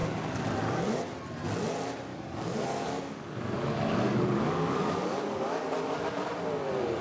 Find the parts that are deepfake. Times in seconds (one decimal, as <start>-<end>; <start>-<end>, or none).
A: 0.0-1.0; 2.1-6.3